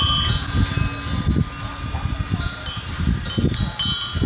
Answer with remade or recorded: recorded